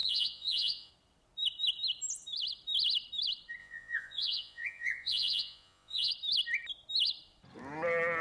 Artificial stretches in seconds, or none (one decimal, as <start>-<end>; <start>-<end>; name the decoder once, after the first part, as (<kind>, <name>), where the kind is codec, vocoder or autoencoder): 0.0-0.9 (vocoder, Vocos); 3.6-6.1